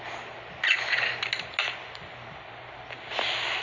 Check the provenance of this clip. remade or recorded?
recorded